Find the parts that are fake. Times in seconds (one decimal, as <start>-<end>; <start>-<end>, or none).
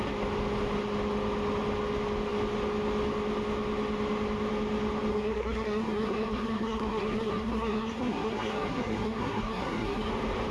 5.1-10.1